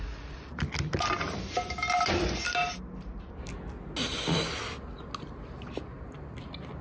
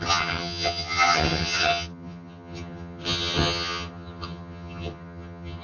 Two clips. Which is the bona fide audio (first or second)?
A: first